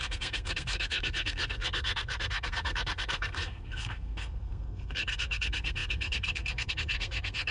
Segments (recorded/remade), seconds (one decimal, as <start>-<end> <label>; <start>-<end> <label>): 0.0-7.5 remade